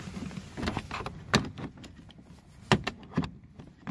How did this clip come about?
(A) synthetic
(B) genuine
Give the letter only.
B